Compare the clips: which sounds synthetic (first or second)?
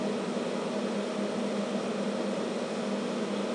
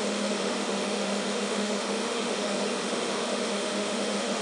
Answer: second